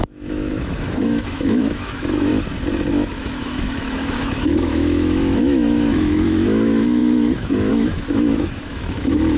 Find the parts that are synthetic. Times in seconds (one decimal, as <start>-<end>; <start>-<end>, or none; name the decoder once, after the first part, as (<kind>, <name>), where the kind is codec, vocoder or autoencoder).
0.0-2.3 (autoencoder, DAC-VAE); 2.9-9.4